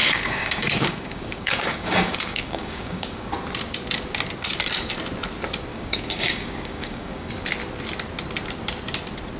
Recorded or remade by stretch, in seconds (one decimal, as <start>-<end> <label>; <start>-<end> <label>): 0.0-3.3 remade; 3.3-5.7 recorded; 5.7-7.3 remade; 7.3-9.4 recorded